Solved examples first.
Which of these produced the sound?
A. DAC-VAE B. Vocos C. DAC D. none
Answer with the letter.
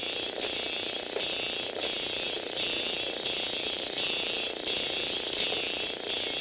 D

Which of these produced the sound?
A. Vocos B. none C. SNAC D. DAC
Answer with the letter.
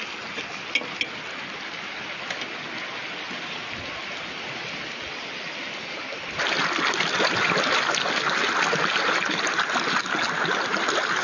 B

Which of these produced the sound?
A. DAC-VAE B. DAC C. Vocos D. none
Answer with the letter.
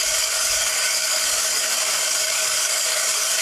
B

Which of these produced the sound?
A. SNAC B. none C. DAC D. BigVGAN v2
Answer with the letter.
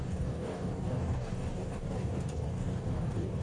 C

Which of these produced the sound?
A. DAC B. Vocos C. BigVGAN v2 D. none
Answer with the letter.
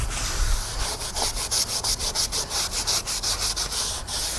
D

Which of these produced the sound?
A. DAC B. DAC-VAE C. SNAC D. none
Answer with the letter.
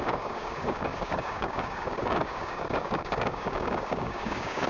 A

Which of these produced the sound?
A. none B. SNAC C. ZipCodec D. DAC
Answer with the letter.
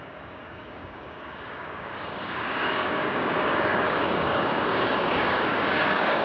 D